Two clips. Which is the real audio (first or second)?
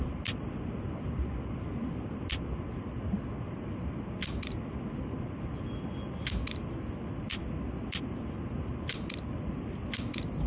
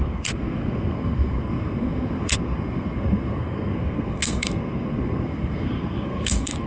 first